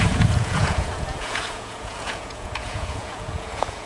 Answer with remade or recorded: remade